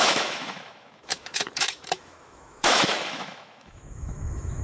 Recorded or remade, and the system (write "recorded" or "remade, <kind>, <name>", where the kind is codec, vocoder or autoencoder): remade, autoencoder, DAC-VAE